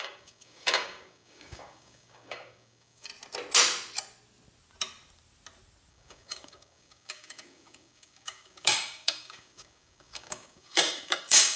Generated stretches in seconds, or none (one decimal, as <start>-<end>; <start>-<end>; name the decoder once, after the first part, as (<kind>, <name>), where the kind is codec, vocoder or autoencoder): 0.0-3.1 (codec, DAC); 5.9-11.6